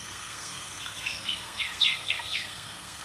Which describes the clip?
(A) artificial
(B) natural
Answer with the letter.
A